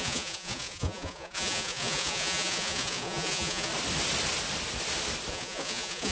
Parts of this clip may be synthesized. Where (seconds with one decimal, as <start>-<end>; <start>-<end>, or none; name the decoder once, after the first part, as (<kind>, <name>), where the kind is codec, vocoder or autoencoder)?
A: 0.0-3.7 (vocoder, Vocos); 5.3-6.1